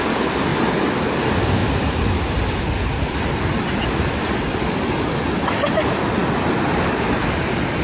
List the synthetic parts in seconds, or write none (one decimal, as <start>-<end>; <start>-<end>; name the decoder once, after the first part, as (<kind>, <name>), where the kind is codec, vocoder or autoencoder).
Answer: 1.6-2.4 (vocoder, BigVGAN v2); 3.0-4.9; 6.2-6.8